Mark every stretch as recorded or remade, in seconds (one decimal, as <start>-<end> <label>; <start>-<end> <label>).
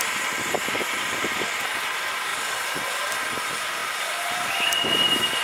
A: 0.0-3.8 recorded; 3.8-5.0 remade; 5.0-5.4 recorded